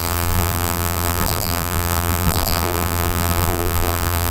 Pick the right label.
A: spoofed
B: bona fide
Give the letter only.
A